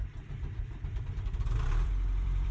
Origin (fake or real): fake